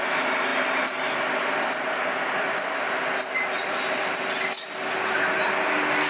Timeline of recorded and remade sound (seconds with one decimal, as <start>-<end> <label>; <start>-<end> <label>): 0.0-6.1 recorded